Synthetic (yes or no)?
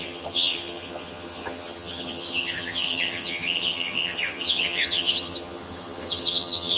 yes